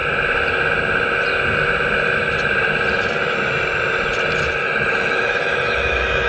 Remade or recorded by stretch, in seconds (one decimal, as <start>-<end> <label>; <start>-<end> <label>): 0.0-4.6 recorded; 4.6-6.3 remade